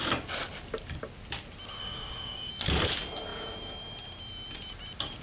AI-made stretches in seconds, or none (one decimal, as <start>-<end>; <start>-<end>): 1.8-2.5